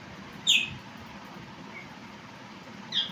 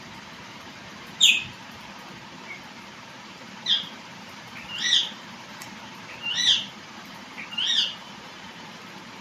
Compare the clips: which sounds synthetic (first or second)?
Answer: second